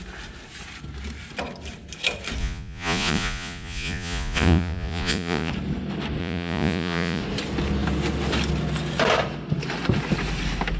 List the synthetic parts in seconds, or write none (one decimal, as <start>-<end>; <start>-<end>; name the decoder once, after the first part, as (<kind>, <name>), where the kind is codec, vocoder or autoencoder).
2.4-5.5 (vocoder, Vocos); 6.2-7.2